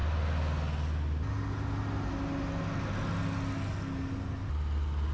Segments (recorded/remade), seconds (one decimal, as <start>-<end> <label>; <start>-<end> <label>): 0.0-5.1 recorded